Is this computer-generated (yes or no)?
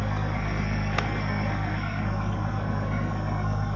yes